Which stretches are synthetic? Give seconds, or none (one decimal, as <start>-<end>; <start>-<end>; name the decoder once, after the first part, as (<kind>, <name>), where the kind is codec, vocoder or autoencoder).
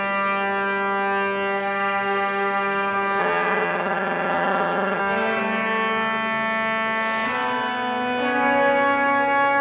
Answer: 3.2-5.0 (vocoder, HiFi-GAN)